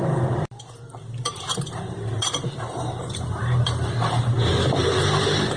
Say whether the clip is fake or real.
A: fake